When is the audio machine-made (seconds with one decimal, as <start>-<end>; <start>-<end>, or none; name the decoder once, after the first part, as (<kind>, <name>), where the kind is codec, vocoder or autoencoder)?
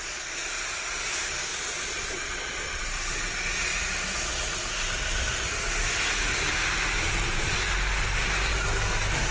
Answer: 1.5-2.8 (vocoder, Vocos)